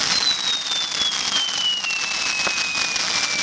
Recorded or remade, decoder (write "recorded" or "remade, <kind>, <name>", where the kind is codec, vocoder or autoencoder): recorded